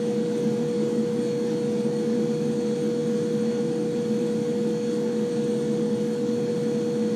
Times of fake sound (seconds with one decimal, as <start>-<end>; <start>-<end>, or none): 0.0-6.5